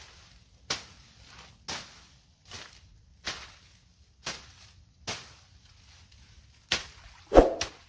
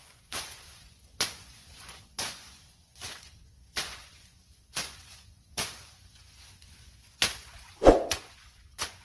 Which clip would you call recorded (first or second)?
first